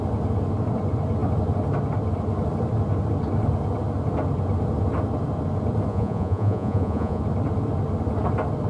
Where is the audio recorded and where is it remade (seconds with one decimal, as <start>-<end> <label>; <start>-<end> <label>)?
0.0-5.9 recorded; 5.9-7.2 remade; 7.2-8.7 recorded